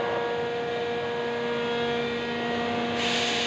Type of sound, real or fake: real